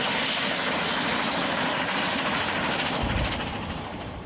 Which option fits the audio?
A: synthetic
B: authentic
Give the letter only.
B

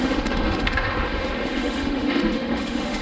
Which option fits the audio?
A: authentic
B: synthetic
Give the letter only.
B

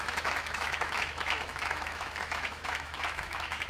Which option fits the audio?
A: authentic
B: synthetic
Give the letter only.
B